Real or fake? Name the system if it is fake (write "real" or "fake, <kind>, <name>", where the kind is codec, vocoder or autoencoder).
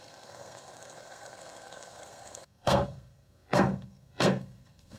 fake, codec, SNAC